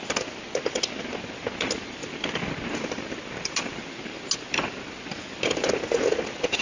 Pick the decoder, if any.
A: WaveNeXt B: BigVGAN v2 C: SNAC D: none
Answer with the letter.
D